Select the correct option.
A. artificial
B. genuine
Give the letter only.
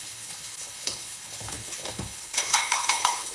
A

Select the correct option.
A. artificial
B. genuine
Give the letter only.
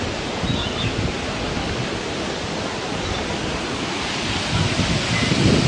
B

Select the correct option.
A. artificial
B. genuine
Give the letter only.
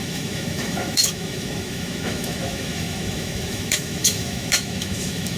A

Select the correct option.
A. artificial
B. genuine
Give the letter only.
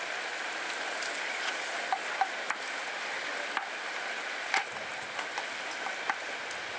B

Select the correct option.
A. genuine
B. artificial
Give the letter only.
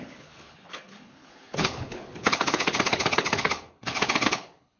B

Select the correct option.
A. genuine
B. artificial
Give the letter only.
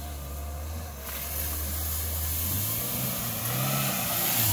A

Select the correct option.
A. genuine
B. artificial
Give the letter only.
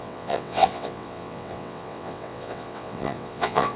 B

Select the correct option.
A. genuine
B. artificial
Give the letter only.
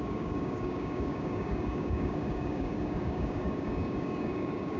B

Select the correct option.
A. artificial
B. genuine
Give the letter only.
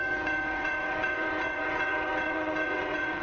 A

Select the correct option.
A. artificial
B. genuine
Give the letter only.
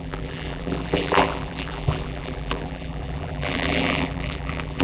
A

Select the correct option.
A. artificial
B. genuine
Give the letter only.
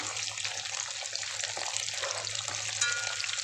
B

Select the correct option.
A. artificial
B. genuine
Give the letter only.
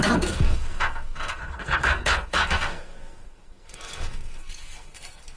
A